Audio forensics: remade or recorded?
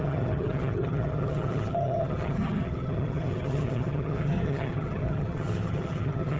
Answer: remade